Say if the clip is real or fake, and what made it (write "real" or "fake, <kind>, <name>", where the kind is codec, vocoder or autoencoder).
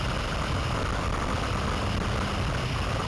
real